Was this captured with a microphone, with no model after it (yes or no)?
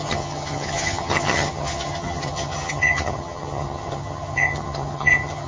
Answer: no